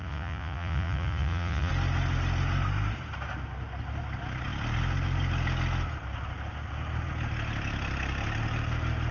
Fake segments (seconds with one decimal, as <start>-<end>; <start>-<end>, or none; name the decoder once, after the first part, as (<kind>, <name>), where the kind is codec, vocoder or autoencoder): 0.0-1.7 (vocoder, Vocos)